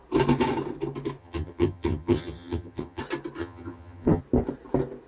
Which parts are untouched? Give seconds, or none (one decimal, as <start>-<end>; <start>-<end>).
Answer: 0.0-1.2; 3.0-3.4; 4.2-5.1